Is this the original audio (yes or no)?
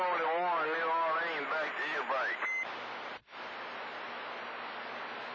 yes